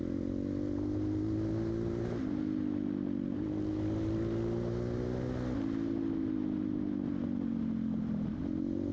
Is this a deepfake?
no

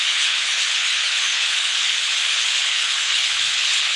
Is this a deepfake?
yes